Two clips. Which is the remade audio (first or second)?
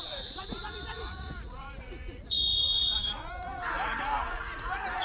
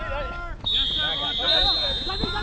first